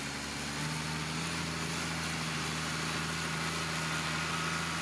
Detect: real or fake real